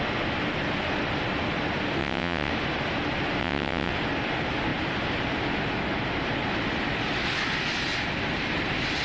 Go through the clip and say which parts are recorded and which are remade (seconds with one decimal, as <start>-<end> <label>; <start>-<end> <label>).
0.0-2.0 recorded; 2.0-2.5 remade; 2.5-3.4 recorded; 3.4-3.9 remade; 3.9-9.0 recorded